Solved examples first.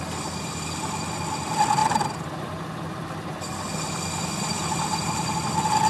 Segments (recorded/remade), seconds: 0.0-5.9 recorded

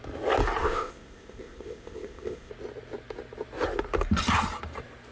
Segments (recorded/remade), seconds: 0.0-0.6 recorded; 0.6-2.5 remade; 2.5-5.1 recorded

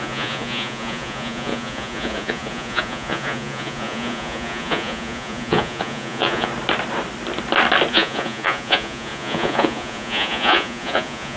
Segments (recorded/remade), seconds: 0.0-6.5 remade; 6.5-7.9 recorded; 7.9-11.4 remade